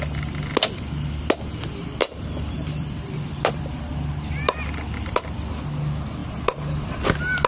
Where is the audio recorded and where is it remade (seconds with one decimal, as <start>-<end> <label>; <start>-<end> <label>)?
0.0-2.0 recorded; 2.0-5.2 remade; 5.2-6.2 recorded; 6.2-7.1 remade; 7.1-7.5 recorded